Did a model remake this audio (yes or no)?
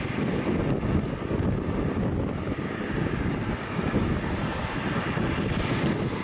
no